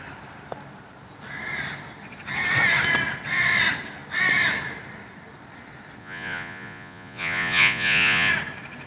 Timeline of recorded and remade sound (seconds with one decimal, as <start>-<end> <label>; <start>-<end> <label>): 0.0-6.0 recorded; 6.0-8.3 remade; 8.3-8.9 recorded